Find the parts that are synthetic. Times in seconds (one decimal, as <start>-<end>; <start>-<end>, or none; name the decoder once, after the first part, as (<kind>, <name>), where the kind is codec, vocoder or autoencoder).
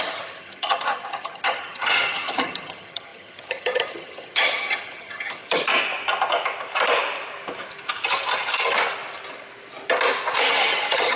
0.0-5.7 (vocoder, HiFi-GAN); 10.5-11.2